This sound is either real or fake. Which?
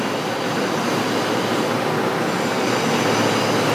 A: real